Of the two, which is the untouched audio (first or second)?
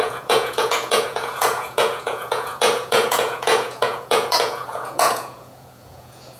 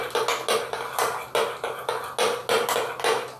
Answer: second